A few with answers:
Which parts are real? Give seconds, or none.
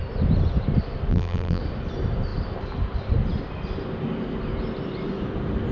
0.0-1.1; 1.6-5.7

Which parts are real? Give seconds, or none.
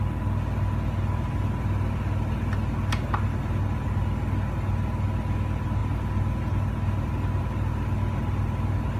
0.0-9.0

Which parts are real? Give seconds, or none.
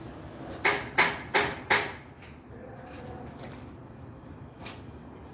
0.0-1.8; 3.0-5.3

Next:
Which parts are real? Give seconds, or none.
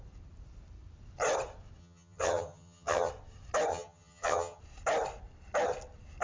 0.0-1.8; 3.1-3.7; 4.6-6.2